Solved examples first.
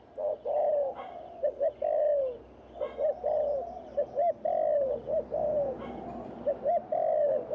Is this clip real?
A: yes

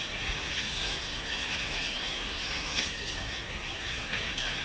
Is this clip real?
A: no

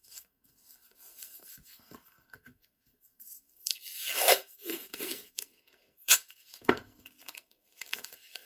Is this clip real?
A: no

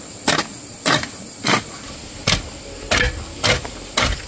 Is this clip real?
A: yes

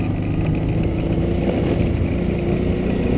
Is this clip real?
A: yes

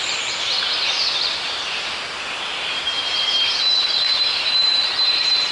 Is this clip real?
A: no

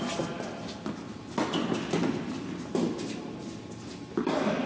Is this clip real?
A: yes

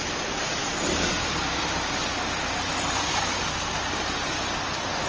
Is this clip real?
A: yes